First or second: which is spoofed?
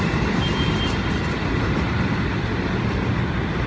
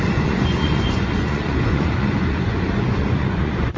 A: second